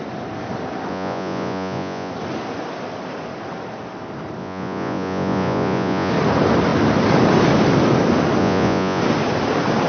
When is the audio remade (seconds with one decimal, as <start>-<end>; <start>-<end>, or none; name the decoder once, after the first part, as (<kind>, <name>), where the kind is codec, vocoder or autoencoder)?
0.9-2.1 (vocoder, Vocos); 4.4-6.1; 8.4-9.0